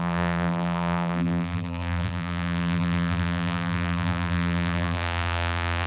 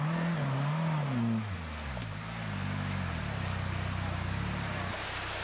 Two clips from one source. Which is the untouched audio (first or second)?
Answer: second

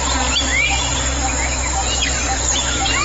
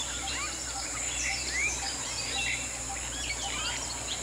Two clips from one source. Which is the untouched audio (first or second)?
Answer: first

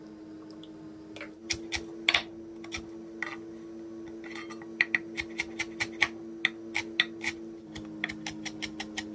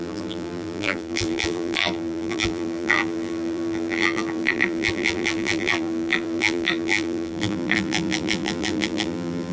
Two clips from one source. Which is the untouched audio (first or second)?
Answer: first